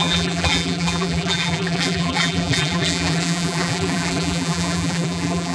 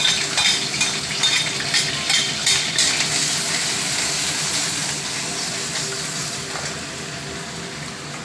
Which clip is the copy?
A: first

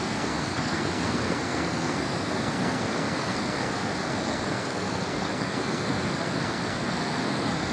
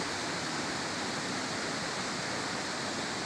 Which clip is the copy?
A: first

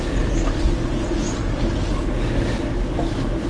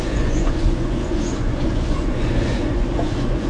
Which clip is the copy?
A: second